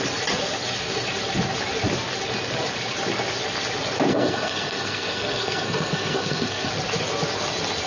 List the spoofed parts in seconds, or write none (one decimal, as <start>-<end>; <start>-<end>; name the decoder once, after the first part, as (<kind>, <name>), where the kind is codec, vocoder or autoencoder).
4.1-6.7 (codec, SNAC)